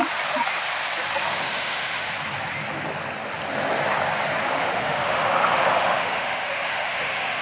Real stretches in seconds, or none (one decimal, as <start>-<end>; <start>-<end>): 0.0-1.4; 2.1-4.6